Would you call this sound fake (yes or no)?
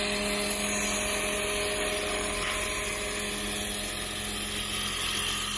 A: no